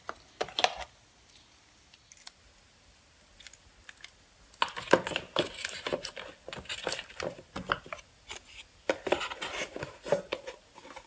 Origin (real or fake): real